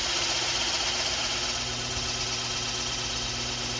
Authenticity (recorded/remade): recorded